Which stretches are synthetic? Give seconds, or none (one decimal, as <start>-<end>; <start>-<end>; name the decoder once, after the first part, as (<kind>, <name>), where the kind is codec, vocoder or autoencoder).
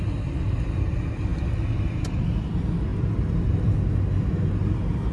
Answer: none